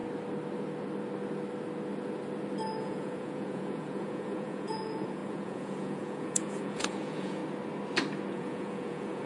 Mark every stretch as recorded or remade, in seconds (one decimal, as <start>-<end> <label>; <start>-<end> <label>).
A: 0.0-2.8 recorded; 2.8-7.4 remade; 7.4-8.3 recorded; 8.3-9.3 remade

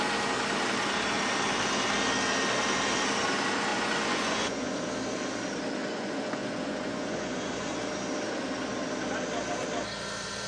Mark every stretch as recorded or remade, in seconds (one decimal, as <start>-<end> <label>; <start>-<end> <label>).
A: 0.0-3.7 recorded; 3.7-4.7 remade; 4.7-5.8 recorded; 5.8-7.7 remade; 7.7-10.5 recorded

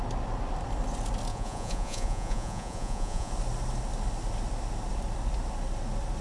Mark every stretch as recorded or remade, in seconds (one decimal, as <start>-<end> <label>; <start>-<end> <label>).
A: 0.0-1.3 recorded; 1.3-3.3 remade; 3.3-6.2 recorded